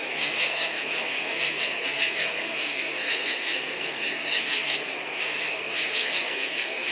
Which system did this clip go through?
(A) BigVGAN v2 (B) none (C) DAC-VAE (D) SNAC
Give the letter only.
D